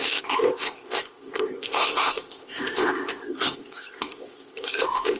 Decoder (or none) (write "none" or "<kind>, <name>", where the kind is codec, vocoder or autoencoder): codec, ZipCodec